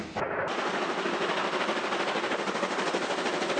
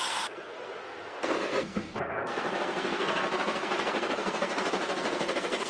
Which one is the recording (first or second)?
first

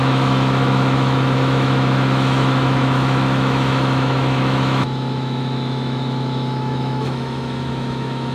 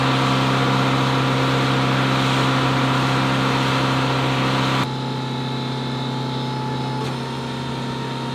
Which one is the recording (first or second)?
second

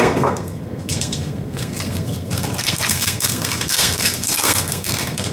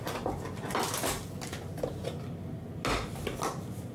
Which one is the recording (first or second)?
second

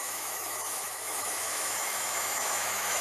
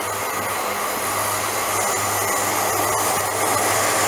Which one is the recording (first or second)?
second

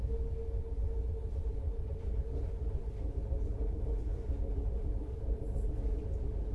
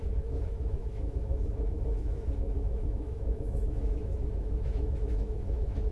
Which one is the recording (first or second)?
first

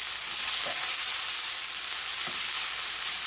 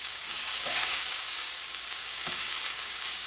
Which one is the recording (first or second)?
first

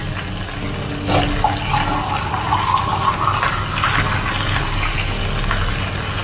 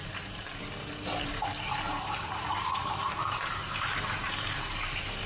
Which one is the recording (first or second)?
first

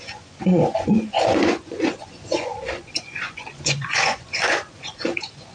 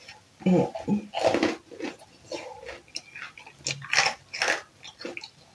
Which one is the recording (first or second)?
second